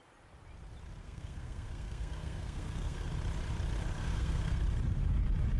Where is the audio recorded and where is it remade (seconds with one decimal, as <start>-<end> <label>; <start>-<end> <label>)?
0.0-1.0 recorded; 1.0-3.1 remade; 3.1-4.0 recorded; 4.0-4.6 remade; 4.6-5.6 recorded